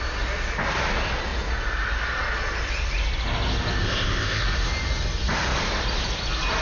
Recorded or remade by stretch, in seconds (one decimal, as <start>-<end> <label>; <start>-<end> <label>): 0.0-3.8 recorded; 3.8-4.4 remade; 4.4-6.6 recorded

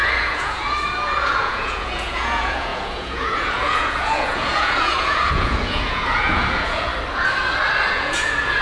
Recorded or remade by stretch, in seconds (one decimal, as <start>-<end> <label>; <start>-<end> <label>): 0.0-6.9 remade; 6.9-7.9 recorded; 7.9-8.6 remade